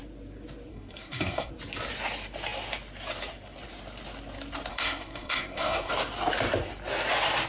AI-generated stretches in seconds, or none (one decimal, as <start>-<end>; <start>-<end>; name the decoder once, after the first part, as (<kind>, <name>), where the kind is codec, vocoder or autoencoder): 0.7-1.5 (codec, SNAC); 4.7-5.9